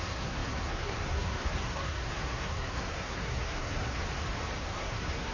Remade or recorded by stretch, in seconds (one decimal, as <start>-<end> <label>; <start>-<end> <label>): 0.0-4.0 remade; 4.0-4.6 recorded; 4.6-5.3 remade